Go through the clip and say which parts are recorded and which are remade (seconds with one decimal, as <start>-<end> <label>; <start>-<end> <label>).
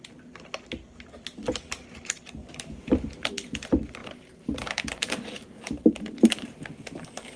0.0-2.4 recorded; 2.4-3.3 remade; 3.3-4.0 recorded; 4.0-6.6 remade; 6.6-7.4 recorded